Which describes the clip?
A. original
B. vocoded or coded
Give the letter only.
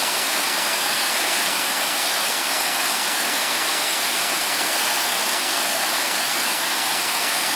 B